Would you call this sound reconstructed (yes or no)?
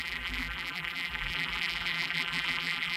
yes